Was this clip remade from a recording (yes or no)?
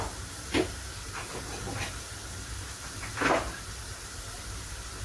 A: no